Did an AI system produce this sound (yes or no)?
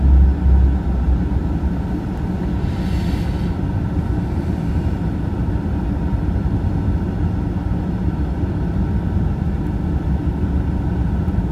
no